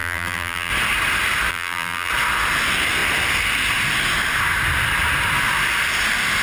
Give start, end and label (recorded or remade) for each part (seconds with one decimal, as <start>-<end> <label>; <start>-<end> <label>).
0.0-0.7 remade; 0.7-1.5 recorded; 1.5-2.1 remade; 2.1-6.4 recorded